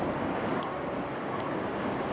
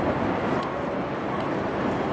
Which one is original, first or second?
second